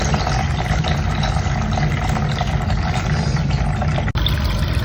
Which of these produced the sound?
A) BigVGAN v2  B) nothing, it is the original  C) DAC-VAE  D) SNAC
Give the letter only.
B